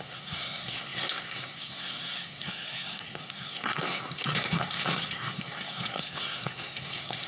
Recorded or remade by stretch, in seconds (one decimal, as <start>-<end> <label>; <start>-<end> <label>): 0.0-7.3 remade